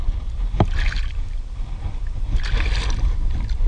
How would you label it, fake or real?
real